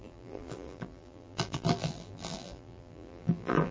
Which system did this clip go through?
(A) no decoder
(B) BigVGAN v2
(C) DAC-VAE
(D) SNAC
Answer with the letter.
B